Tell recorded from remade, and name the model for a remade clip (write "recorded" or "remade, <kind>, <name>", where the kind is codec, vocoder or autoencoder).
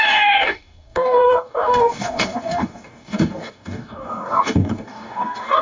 remade, codec, DAC